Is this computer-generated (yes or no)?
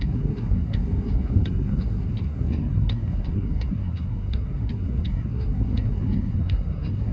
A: yes